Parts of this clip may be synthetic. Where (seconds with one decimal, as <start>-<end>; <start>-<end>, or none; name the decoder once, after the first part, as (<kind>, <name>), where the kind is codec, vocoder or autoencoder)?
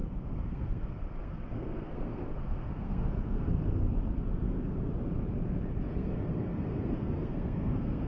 0.0-4.9 (codec, SNAC); 5.9-8.1